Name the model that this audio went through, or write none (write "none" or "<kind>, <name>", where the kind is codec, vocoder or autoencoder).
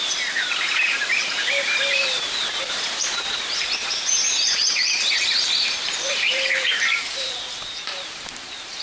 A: vocoder, BigVGAN v2